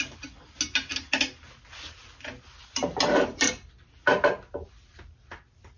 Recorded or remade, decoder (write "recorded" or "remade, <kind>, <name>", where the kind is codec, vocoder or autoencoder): recorded